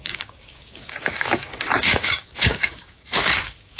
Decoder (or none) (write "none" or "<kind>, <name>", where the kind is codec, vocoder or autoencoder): codec, DAC